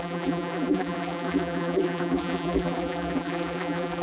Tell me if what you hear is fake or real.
fake